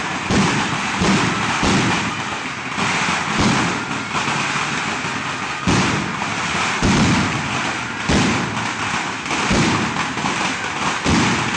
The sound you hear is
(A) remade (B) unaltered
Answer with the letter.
B